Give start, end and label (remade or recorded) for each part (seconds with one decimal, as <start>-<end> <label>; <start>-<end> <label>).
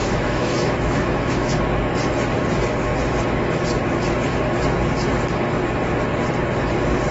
0.0-1.5 remade; 1.5-7.1 recorded